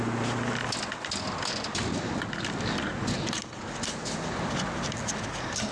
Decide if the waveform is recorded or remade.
recorded